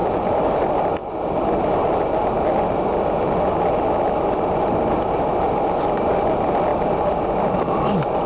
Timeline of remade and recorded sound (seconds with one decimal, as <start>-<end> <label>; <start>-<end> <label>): 0.0-6.7 recorded; 6.7-7.7 remade; 7.7-8.3 recorded